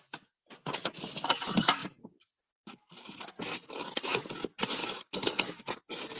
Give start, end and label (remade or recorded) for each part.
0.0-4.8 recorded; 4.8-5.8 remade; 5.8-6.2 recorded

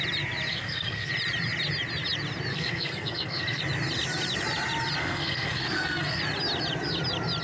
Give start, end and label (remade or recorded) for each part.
0.0-0.5 recorded; 0.5-1.1 remade; 1.1-2.5 recorded; 2.5-3.6 remade; 3.6-5.0 recorded; 5.0-6.2 remade; 6.2-7.4 recorded

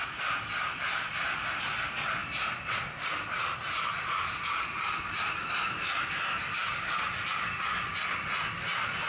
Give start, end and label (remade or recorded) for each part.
0.0-2.2 recorded; 2.2-5.9 remade; 5.9-9.1 recorded

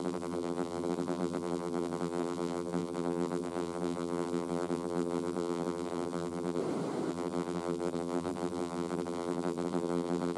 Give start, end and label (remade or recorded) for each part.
0.0-6.6 remade; 6.6-7.1 recorded; 7.1-10.4 remade

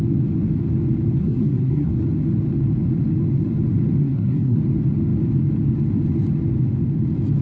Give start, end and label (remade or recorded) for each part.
0.0-1.2 recorded; 1.2-1.9 remade; 1.9-4.0 recorded; 4.0-4.6 remade; 4.6-7.4 recorded